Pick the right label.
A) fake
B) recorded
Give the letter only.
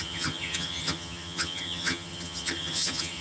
A